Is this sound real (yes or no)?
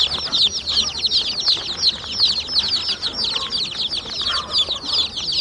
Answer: yes